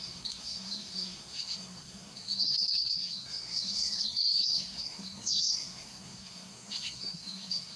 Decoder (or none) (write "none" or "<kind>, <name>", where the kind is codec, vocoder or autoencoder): codec, SNAC